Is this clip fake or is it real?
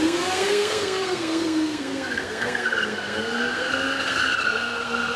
fake